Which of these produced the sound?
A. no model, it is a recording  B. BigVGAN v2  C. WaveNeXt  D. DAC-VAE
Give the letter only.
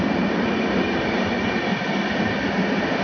A